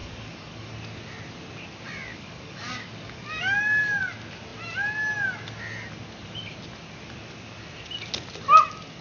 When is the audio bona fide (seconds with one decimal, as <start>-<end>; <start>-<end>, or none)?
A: 0.7-2.1; 4.0-9.0